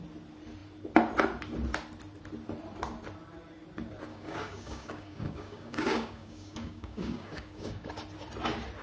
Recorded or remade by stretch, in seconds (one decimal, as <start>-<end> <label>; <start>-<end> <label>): 0.0-4.1 recorded; 4.1-7.9 remade; 7.9-8.8 recorded